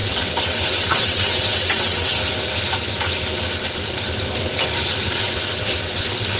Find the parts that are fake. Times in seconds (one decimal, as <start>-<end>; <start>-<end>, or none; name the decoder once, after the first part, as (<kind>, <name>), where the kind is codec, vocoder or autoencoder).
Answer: 0.0-2.1 (vocoder, WaveNeXt); 5.1-6.4